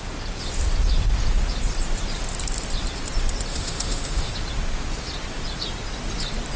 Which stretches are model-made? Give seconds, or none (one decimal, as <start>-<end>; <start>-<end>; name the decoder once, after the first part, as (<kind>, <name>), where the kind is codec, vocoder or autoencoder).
3.5-4.3 (autoencoder, DAC-VAE)